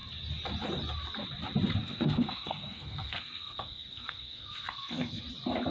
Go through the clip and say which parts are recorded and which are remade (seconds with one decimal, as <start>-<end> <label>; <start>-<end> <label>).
0.0-1.8 recorded; 1.8-5.2 remade; 5.2-5.7 recorded